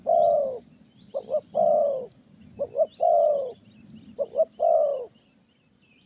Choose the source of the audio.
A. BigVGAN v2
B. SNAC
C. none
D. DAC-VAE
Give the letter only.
A